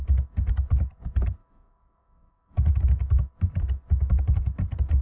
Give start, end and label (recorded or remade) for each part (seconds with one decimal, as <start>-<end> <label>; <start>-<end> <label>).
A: 0.0-1.4 recorded; 1.4-2.7 remade; 2.7-5.0 recorded